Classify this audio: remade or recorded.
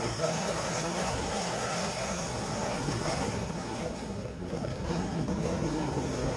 remade